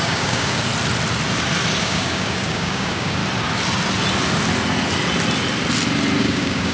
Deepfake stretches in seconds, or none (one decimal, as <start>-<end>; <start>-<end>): 0.0-0.7; 1.8-3.2; 6.2-6.7

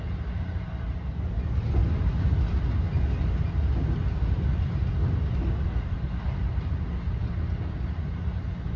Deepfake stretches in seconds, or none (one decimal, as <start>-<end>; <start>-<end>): none

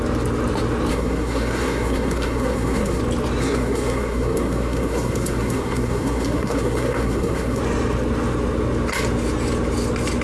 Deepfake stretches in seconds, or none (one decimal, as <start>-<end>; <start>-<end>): 0.9-3.0; 3.4-7.6

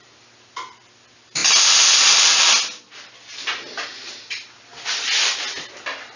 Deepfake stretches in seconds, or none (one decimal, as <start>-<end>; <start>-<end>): none

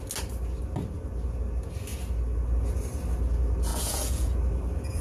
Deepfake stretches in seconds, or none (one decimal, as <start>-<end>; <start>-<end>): 3.7-4.4